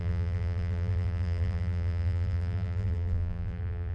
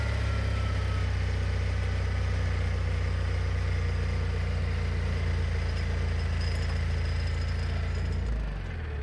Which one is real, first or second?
second